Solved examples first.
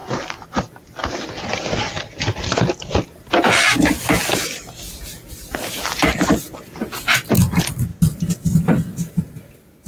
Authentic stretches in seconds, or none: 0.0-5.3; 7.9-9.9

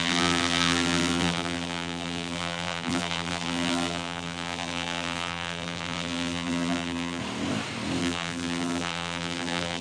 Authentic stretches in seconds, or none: 7.2-8.0

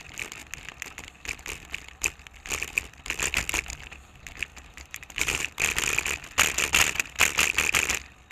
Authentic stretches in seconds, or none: 0.0-4.5; 5.5-8.3

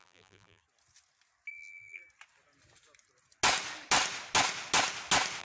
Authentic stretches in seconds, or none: 0.6-1.5; 2.0-5.4

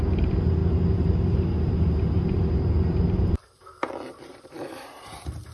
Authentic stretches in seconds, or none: none